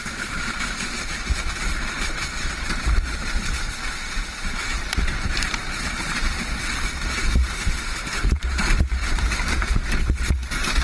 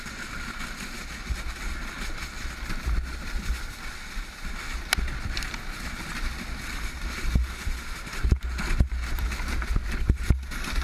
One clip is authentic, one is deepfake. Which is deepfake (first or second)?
first